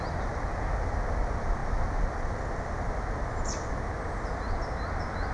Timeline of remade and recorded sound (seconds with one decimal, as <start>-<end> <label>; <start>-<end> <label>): 0.0-5.3 recorded